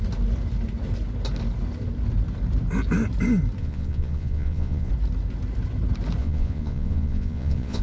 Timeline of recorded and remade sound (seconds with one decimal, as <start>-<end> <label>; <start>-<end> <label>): 0.0-3.6 recorded; 3.6-4.9 remade; 4.9-6.2 recorded; 6.2-7.8 remade